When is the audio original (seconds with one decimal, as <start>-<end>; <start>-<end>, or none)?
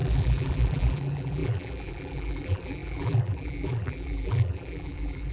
none